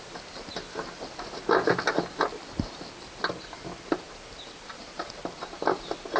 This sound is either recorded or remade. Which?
recorded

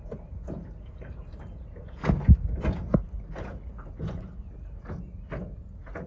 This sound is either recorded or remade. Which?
recorded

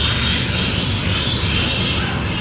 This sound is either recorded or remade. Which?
recorded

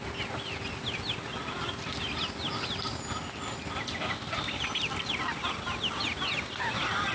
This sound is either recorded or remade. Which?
recorded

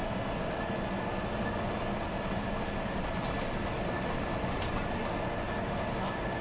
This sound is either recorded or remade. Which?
recorded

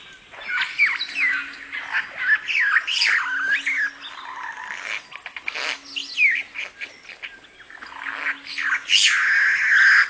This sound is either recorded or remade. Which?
recorded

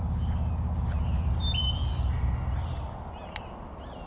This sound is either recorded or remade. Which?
recorded